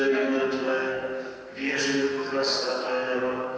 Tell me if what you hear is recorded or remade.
remade